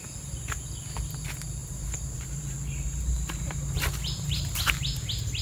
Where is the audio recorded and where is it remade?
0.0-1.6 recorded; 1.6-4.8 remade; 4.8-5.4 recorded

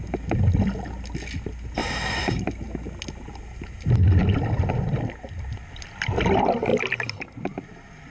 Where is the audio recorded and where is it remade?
0.0-4.2 recorded; 4.2-4.7 remade; 4.7-8.1 recorded